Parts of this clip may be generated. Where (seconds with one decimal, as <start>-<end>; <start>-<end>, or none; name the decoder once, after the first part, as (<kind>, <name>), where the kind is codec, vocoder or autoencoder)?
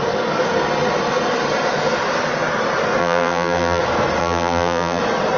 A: 3.0-3.8 (vocoder, BigVGAN v2); 4.2-5.0